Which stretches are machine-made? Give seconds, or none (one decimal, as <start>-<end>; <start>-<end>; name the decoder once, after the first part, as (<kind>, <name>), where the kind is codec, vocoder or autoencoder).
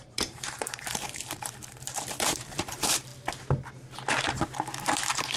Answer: 0.0-3.1 (vocoder, BigVGAN v2); 4.8-5.4